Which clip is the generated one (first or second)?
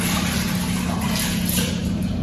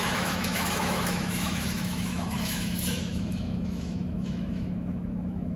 second